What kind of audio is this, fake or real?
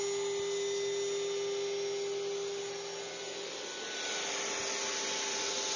real